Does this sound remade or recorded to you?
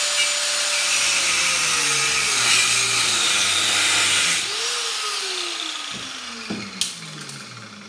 recorded